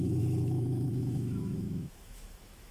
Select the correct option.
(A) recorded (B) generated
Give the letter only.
B